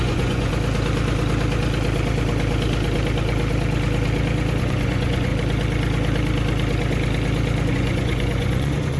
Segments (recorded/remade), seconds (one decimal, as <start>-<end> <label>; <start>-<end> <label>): 0.0-0.5 remade; 0.5-4.6 recorded; 4.6-5.3 remade; 5.3-7.7 recorded; 7.7-9.0 remade